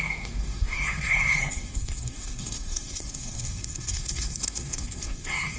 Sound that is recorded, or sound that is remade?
remade